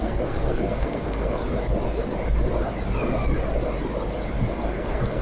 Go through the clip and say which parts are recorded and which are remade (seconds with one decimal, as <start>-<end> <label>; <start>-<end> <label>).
0.0-1.4 remade; 1.4-4.5 recorded; 4.5-5.2 remade